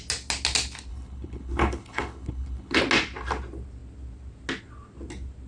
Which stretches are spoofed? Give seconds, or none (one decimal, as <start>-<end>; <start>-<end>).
0.9-2.8